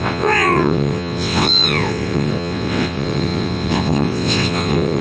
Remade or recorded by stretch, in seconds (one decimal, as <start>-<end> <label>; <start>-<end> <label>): 0.0-5.0 remade